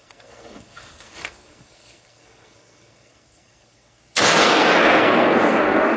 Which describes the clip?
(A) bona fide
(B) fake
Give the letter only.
B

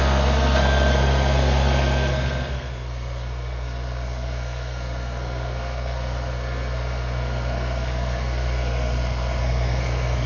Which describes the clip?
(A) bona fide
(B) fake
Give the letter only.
B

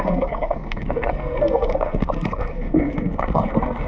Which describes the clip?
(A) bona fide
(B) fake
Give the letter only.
B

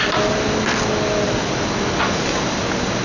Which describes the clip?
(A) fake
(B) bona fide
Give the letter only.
B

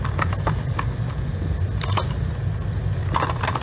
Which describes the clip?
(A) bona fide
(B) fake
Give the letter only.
A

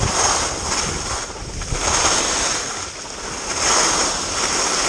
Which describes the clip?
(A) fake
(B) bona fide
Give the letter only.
B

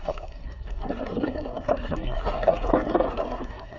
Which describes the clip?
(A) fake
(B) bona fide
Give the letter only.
A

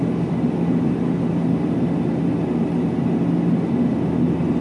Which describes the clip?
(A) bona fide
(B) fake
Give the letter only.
A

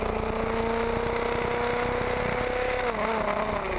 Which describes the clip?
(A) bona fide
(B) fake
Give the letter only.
A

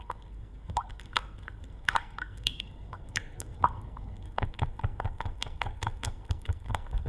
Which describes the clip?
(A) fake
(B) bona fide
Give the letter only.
A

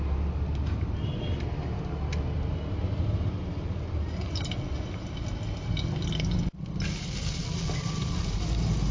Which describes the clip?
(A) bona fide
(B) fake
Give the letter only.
A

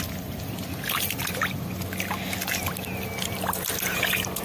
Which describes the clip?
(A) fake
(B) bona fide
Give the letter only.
B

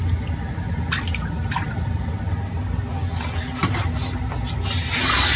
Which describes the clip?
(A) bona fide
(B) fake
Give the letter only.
A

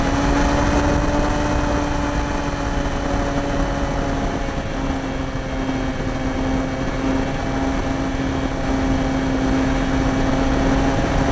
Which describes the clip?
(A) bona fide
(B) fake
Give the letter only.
A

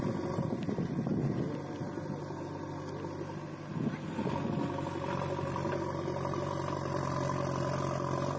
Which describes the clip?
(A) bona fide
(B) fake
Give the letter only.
A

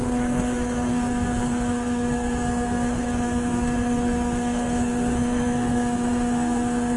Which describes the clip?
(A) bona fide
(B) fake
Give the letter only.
B